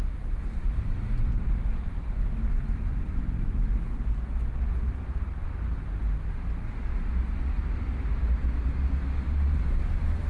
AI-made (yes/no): no